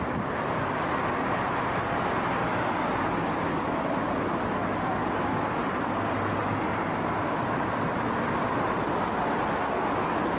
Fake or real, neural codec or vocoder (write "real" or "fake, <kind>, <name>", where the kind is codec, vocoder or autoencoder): real